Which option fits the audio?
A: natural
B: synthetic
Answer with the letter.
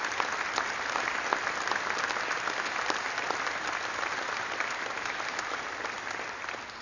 A